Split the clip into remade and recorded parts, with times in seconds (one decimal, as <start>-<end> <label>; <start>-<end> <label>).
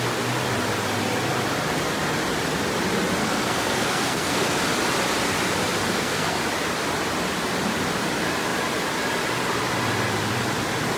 0.0-3.2 recorded; 3.2-4.6 remade; 4.6-5.9 recorded; 5.9-6.4 remade; 6.4-11.0 recorded